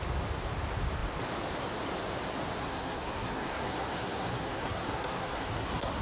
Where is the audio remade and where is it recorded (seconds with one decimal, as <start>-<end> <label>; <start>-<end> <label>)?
0.0-2.6 recorded; 2.6-6.0 remade